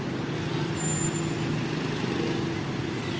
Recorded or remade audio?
recorded